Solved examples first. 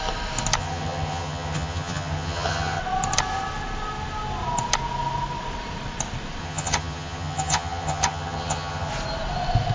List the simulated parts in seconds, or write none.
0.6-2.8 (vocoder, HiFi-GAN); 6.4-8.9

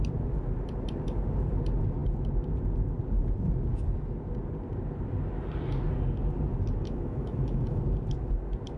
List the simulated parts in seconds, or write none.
6.8-7.8 (autoencoder, DAC-VAE)

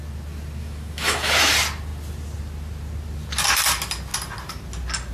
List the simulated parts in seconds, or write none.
0.6-1.5 (autoencoder, DAC-VAE)

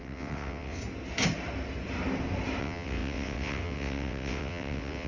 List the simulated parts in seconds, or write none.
0.0-0.8 (vocoder, WaveNeXt); 2.6-5.1